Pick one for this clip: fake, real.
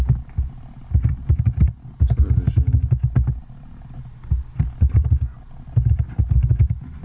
real